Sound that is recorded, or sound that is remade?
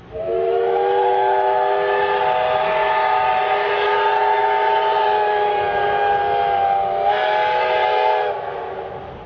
recorded